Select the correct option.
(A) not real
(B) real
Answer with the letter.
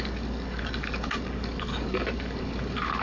A